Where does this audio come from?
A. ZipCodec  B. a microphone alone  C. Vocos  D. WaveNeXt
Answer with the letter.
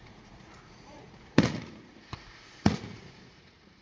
C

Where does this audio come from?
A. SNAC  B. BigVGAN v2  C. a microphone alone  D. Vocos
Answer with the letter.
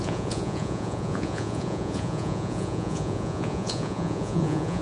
D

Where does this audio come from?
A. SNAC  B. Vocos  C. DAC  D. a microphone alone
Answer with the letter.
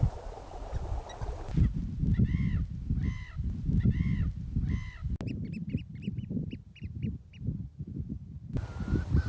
D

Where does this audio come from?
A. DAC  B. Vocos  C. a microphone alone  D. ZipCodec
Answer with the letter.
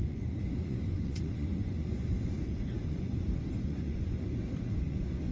B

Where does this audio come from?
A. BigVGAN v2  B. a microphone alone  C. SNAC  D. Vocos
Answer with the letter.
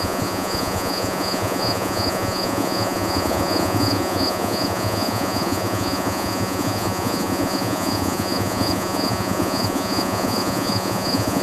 D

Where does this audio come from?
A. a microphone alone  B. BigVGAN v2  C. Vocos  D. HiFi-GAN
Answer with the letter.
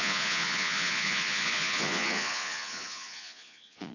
C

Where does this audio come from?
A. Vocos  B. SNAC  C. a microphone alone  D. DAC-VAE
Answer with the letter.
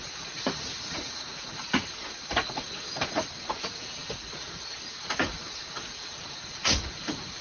A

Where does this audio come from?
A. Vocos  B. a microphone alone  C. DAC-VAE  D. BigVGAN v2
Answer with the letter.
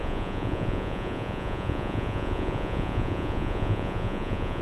A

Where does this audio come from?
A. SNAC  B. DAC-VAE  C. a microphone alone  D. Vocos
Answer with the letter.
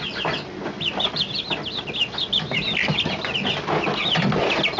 C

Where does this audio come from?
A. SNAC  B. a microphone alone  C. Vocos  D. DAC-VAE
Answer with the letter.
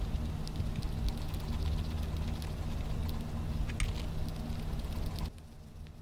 B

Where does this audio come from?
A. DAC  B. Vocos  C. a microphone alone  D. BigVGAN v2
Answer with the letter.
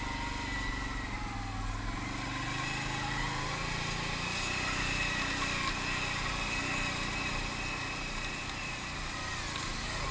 C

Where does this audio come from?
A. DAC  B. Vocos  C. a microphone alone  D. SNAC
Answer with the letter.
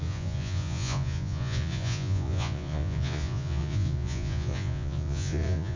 B